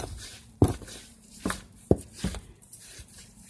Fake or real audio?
fake